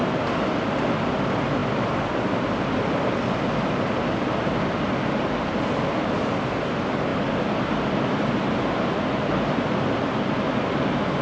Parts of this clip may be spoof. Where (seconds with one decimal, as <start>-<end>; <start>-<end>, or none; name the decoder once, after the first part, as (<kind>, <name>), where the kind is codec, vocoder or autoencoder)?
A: none